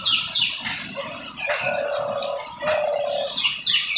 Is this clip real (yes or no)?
yes